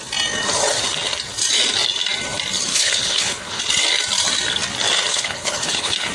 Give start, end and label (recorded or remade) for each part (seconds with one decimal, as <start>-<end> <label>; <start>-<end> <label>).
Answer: 0.0-2.7 recorded; 2.7-3.6 remade; 3.6-5.1 recorded; 5.1-6.1 remade